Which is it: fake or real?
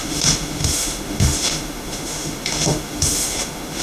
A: fake